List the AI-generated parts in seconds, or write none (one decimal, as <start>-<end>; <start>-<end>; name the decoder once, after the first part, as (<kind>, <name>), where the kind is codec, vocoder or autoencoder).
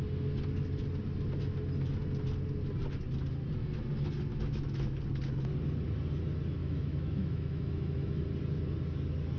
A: 4.3-5.0 (autoencoder, DAC-VAE); 6.6-8.2